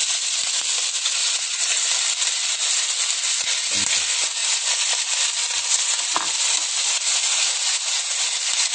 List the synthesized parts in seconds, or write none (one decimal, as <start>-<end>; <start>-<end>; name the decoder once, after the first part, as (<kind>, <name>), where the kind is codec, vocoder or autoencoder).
1.2-1.7 (vocoder, Vocos)